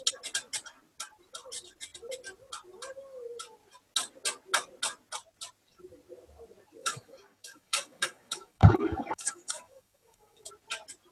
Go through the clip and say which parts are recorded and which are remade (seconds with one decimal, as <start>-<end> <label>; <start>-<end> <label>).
0.0-6.8 recorded; 6.8-10.5 remade; 10.5-11.1 recorded